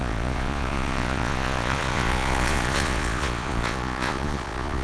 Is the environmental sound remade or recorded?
remade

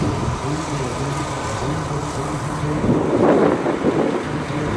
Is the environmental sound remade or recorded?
recorded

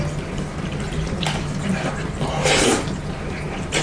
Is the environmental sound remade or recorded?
recorded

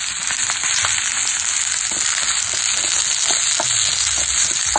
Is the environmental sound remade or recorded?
recorded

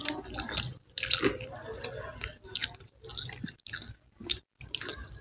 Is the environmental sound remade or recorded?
recorded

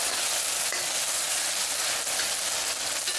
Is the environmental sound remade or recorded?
recorded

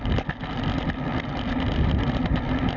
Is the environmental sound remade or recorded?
recorded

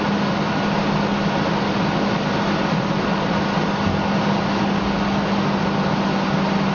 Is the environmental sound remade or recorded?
recorded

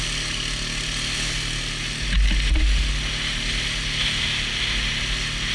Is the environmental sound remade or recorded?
recorded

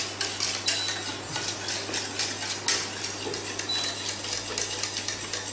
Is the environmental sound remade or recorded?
recorded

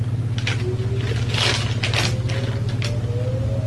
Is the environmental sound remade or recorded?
recorded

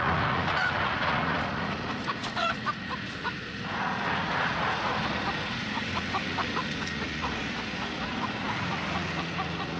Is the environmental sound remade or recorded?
remade